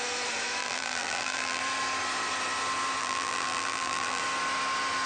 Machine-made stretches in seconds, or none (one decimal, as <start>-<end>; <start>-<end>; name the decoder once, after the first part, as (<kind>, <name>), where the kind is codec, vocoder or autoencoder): 0.6-1.6 (vocoder, BigVGAN v2); 3.0-4.2